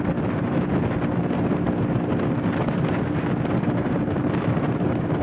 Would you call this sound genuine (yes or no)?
yes